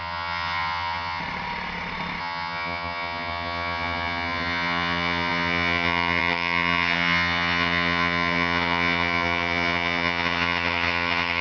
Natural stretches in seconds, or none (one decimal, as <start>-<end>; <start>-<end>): 1.2-2.2